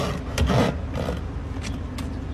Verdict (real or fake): real